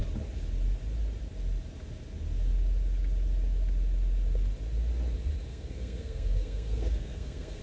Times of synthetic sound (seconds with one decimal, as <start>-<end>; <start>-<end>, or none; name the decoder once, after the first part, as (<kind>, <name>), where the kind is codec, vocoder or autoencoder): 5.5-7.6 (codec, SNAC)